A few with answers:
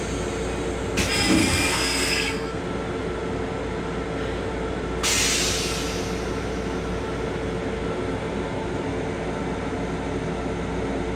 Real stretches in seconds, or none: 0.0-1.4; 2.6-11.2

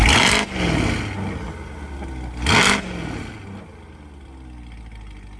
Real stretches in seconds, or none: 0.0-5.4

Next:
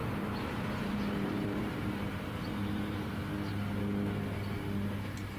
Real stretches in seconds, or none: 3.2-5.4

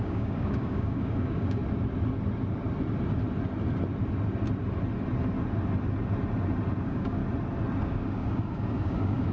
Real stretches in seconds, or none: 1.6-6.8; 7.2-7.8

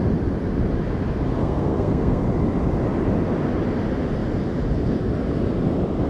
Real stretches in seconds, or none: 0.0-1.4; 2.2-6.1

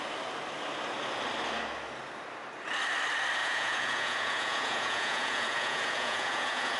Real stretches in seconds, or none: 0.0-3.4

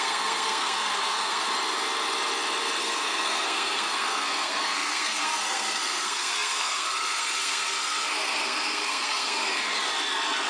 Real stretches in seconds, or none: 1.5-2.8; 9.7-10.5

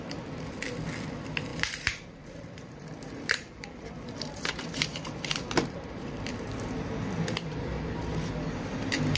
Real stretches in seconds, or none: 0.0-1.5; 6.7-9.2